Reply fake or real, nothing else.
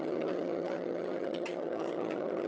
fake